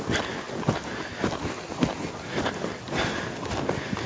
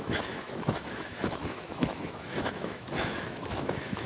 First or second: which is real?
first